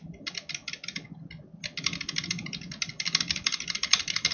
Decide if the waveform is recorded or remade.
recorded